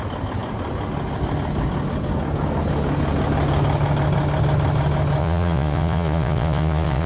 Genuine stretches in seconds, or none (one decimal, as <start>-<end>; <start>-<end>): 0.0-5.2